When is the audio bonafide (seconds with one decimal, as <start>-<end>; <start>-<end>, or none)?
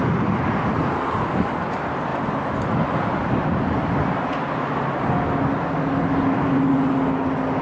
0.0-7.6